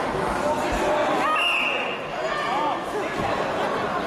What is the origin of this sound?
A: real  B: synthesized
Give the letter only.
A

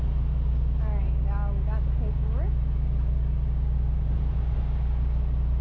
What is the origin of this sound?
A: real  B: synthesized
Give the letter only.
A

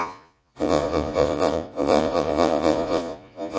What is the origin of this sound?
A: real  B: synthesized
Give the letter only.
B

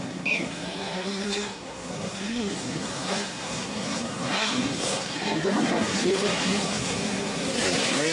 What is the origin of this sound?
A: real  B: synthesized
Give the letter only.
B